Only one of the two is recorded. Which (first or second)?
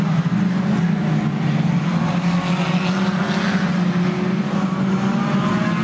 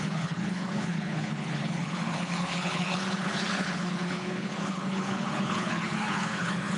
first